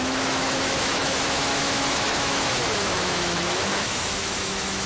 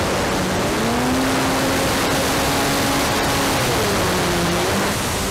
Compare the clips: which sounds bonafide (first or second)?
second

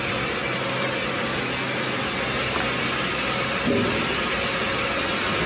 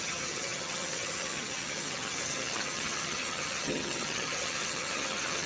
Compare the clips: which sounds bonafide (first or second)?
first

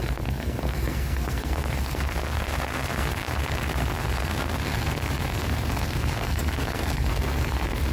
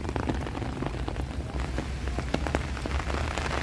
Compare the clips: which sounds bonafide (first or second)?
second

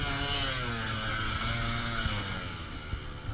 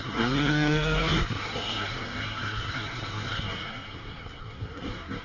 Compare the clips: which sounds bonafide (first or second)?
first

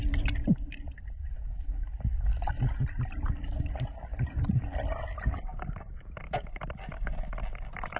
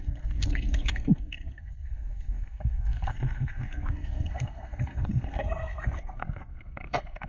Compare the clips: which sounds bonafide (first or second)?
first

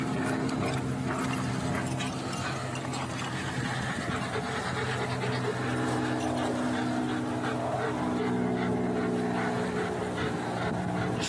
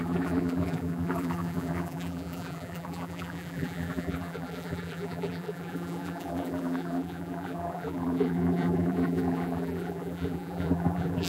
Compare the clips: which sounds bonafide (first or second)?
first